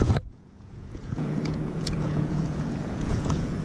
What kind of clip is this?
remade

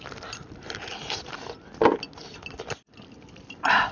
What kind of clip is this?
recorded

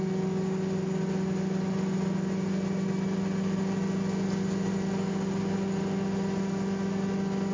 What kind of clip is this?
recorded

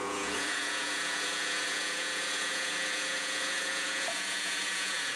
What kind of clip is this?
remade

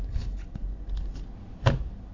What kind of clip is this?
recorded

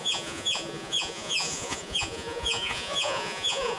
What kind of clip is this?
remade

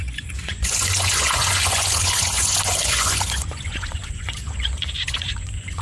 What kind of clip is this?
remade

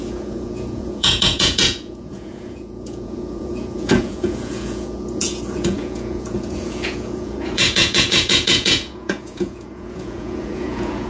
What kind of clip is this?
remade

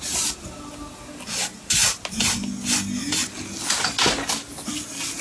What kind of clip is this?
recorded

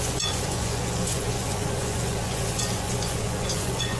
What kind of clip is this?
remade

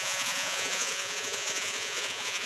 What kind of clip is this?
remade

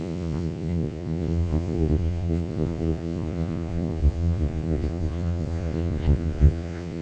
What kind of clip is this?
remade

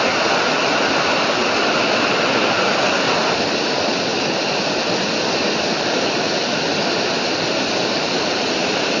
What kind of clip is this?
recorded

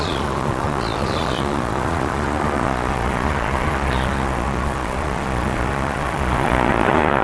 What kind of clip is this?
remade